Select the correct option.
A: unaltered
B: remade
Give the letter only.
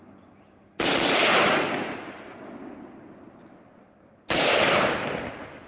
A